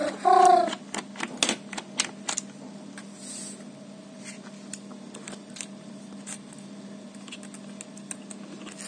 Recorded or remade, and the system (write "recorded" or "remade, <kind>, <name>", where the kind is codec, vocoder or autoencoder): recorded